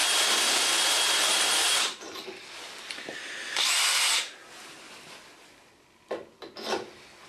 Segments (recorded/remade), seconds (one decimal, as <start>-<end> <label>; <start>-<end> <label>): 0.0-4.4 remade; 4.4-7.3 recorded